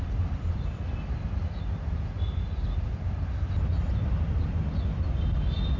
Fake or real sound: real